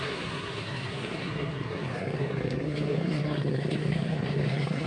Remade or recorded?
remade